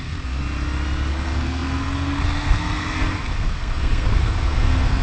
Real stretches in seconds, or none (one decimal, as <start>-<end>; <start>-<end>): 0.4-1.1